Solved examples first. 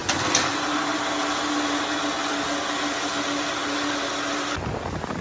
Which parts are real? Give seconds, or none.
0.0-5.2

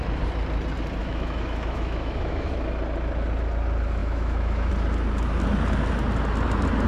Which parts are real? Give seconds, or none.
0.0-1.0; 2.5-4.0; 4.7-6.9

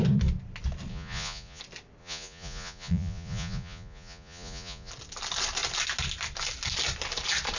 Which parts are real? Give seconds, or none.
0.0-0.9; 1.6-2.0; 4.9-7.6

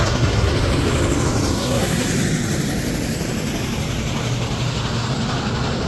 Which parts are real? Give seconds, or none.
0.5-1.5; 2.1-5.9

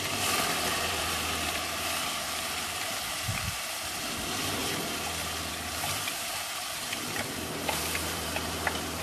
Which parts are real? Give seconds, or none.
4.6-5.5

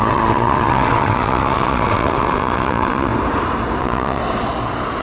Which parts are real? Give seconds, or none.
3.1-3.8; 4.2-5.0

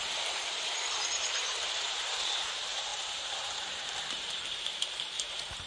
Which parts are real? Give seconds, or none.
none